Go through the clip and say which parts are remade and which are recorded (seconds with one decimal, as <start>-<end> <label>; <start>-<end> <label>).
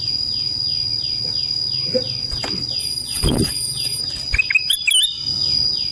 0.0-2.8 recorded; 2.8-4.0 remade; 4.0-5.9 recorded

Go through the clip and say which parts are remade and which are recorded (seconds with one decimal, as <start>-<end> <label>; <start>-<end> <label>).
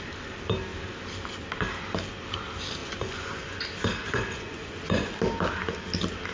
0.0-2.8 recorded; 2.8-3.6 remade; 3.6-4.0 recorded; 4.0-5.1 remade; 5.1-6.3 recorded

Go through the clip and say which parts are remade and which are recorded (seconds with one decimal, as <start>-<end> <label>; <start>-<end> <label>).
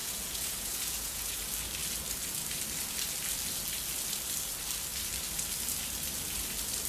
0.0-1.4 remade; 1.4-6.9 recorded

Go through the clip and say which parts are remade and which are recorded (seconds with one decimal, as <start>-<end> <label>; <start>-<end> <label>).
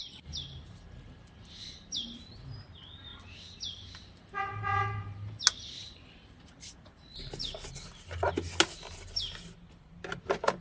0.0-10.6 recorded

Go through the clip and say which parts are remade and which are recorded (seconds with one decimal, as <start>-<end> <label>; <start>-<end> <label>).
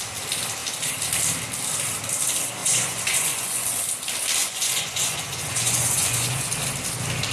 0.0-2.6 recorded; 2.6-3.8 remade; 3.8-4.4 recorded; 4.4-6.5 remade; 6.5-7.3 recorded